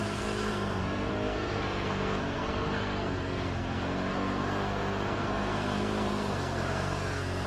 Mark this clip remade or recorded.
remade